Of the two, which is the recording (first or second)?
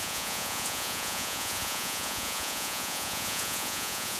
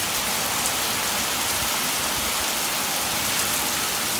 second